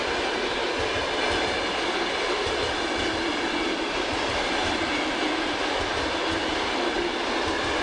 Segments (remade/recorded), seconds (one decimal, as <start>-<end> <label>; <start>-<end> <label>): 0.0-7.8 recorded